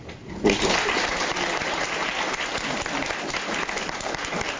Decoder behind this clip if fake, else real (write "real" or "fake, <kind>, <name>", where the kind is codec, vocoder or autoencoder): real